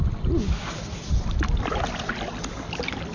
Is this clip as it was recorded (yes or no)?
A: yes